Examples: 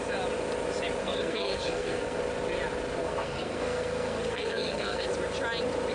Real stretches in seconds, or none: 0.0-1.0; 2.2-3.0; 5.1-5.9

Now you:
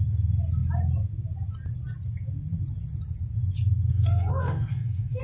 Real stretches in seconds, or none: 0.0-3.9

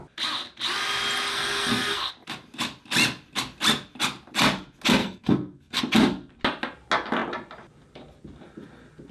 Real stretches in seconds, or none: 0.0-1.3; 2.1-5.0; 5.8-9.1

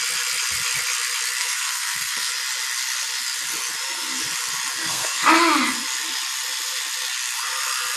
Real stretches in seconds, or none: 0.0-1.4; 2.3-4.8; 5.4-8.0

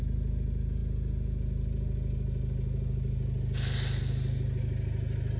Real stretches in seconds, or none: 0.0-5.4